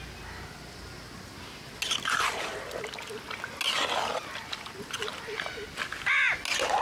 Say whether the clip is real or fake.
real